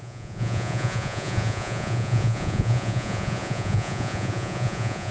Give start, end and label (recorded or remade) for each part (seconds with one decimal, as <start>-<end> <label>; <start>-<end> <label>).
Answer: 0.0-5.1 remade